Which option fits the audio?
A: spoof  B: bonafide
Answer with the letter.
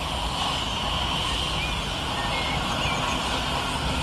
B